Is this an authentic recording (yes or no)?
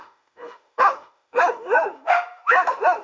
no